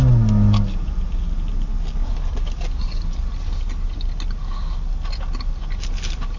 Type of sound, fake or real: real